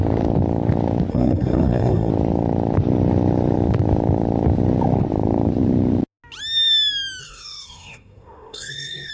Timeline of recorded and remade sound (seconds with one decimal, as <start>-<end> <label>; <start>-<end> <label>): 0.0-1.1 recorded; 1.1-2.1 remade; 2.1-7.2 recorded; 7.2-9.1 remade